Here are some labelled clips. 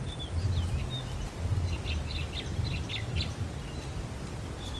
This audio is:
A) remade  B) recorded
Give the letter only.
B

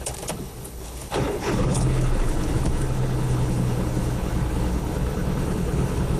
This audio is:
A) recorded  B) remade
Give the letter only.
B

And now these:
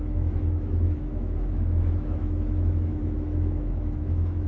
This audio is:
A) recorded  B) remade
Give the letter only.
B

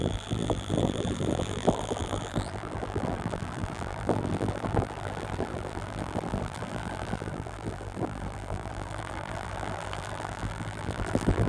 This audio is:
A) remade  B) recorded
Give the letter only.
A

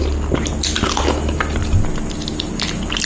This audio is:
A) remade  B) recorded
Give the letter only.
B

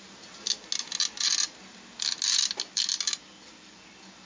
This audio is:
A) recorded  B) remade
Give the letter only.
A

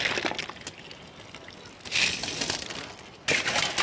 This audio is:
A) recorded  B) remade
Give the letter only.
A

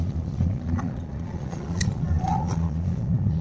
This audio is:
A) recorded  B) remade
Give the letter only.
B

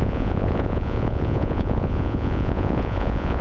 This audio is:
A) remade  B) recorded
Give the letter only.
A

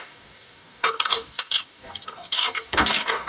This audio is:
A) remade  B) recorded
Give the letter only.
A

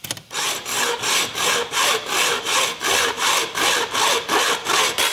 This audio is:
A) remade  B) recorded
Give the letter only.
B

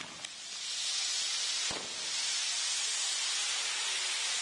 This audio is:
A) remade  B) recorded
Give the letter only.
B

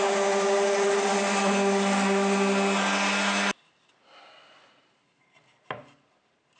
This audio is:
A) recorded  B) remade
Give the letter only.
A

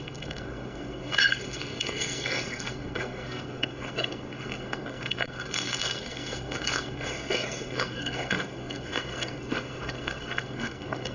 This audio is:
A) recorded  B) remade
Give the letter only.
B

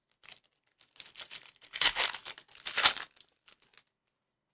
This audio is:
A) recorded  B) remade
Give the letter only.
A